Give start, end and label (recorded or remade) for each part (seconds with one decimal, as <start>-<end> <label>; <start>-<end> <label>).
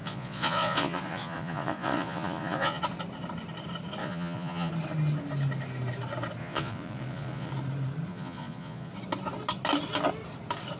0.0-2.8 remade; 2.8-4.0 recorded; 4.0-4.7 remade; 4.7-6.4 recorded; 6.4-7.5 remade; 7.5-8.1 recorded; 8.1-8.9 remade; 8.9-10.8 recorded